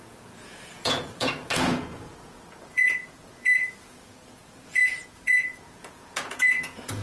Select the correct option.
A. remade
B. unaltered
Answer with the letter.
A